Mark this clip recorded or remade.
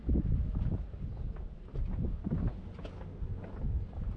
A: recorded